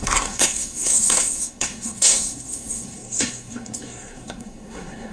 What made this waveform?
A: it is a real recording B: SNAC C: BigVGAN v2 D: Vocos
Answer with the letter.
B